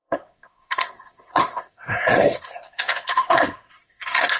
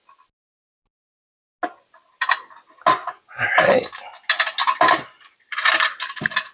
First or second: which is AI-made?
first